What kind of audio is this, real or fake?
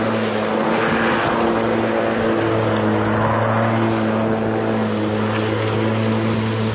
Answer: real